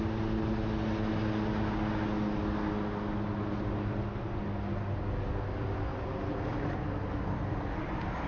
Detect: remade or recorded recorded